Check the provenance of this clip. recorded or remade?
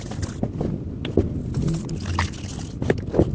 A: recorded